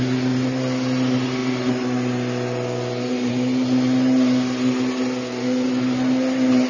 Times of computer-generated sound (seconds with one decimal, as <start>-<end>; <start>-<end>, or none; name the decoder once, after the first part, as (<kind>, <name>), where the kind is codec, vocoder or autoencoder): none